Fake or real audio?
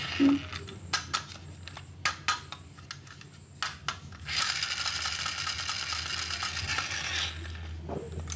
real